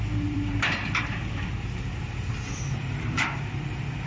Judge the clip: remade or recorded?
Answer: remade